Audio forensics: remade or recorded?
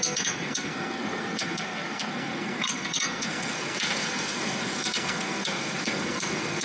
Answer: remade